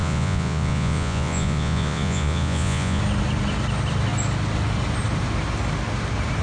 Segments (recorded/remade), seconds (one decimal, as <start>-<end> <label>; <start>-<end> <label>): 0.0-3.0 remade; 3.0-6.4 recorded